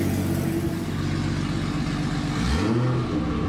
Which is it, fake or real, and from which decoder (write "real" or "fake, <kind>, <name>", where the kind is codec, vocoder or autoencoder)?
real